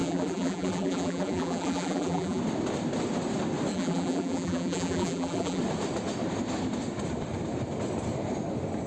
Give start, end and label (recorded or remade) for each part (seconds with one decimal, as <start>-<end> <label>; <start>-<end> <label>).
0.0-2.4 remade; 2.4-3.7 recorded; 3.7-5.6 remade; 5.6-8.9 recorded